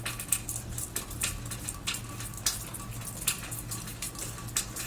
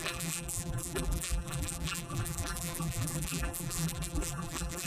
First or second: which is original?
first